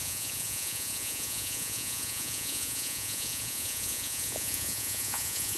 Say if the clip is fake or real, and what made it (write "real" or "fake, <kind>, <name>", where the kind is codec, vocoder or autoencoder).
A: fake, vocoder, Vocos